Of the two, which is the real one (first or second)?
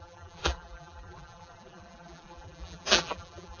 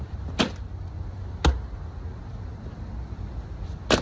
second